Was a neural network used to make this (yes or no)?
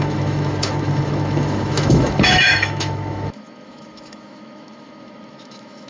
yes